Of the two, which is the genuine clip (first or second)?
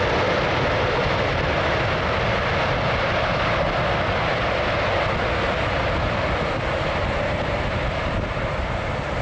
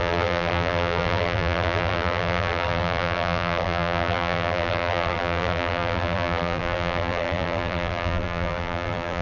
first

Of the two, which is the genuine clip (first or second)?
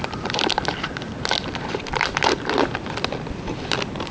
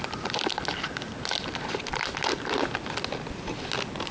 second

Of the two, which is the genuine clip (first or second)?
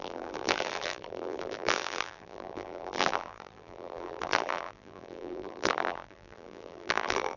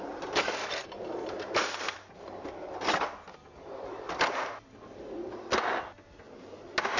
second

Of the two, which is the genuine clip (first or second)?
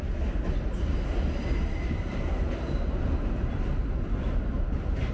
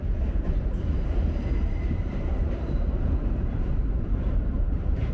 first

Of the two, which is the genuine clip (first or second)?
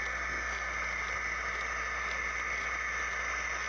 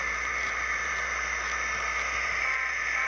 first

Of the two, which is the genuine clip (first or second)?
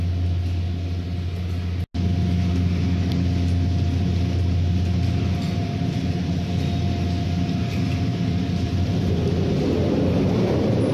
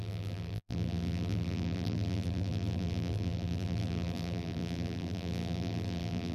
first